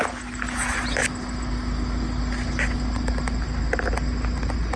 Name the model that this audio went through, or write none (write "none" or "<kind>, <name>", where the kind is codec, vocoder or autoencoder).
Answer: none